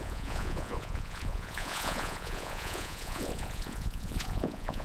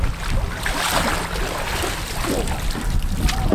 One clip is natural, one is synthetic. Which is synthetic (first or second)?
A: first